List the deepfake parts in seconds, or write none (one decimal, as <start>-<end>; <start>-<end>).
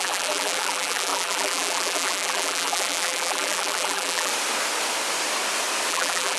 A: 0.0-4.3; 5.9-6.4